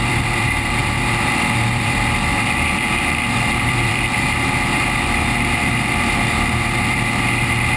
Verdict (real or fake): fake